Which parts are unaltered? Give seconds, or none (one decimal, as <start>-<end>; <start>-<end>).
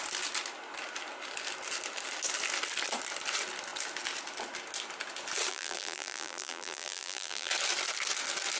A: 0.0-5.5; 7.5-8.6